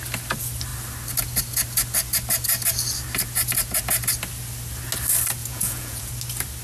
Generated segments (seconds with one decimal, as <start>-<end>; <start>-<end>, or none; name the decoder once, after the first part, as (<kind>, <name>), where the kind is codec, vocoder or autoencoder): 5.4-6.1 (vocoder, Vocos)